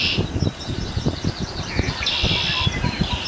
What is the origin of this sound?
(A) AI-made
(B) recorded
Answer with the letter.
B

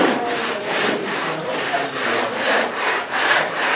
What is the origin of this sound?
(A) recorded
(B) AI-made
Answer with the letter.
B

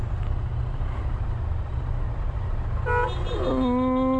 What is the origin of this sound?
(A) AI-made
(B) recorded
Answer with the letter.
B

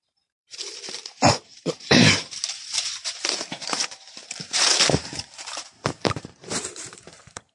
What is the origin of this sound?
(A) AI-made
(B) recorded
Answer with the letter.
A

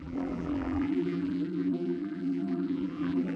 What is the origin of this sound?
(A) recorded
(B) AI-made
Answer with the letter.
B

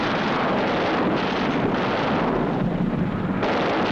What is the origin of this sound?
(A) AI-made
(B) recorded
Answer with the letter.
B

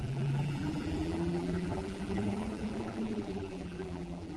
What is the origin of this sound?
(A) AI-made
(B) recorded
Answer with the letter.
A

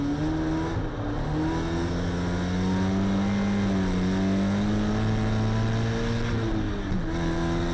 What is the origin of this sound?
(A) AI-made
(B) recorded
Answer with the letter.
B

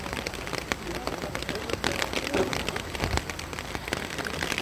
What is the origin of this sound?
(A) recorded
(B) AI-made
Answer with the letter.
A